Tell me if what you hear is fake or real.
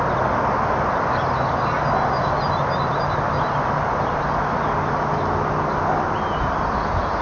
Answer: real